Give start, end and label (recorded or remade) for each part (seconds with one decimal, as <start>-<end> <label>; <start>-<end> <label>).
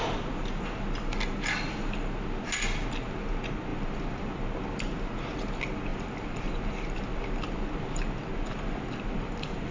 0.0-3.7 recorded; 3.7-4.5 remade; 4.5-5.9 recorded; 5.9-9.7 remade